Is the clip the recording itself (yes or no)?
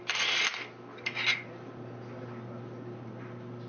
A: yes